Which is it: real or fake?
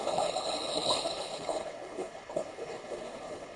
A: fake